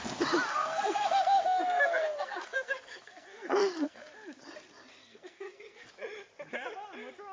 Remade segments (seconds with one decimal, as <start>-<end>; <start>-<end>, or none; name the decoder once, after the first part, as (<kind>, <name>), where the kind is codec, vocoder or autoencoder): 0.5-4.1 (codec, SNAC); 5.0-5.9